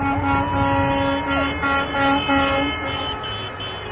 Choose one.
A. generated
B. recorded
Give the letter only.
B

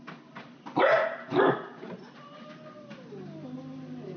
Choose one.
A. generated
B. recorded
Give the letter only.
B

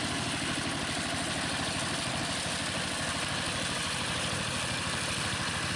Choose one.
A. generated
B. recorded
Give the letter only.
B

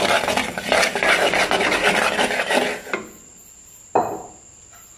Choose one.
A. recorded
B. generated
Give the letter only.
A